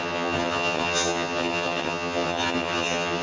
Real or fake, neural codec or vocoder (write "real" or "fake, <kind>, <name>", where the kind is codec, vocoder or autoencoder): fake, vocoder, HiFi-GAN